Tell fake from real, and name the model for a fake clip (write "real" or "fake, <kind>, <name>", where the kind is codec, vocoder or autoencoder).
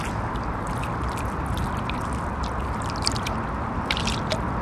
fake, vocoder, BigVGAN v2